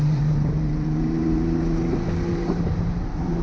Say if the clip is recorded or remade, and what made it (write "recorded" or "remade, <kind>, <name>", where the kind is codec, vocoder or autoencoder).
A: remade, vocoder, BigVGAN v2